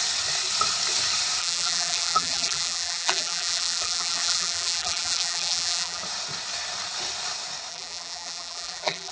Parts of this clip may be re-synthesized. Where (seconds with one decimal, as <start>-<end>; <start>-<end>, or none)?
1.4-6.0; 7.7-9.1